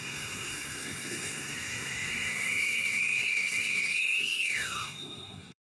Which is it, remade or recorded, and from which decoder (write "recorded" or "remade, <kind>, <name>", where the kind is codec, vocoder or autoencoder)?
remade, codec, SNAC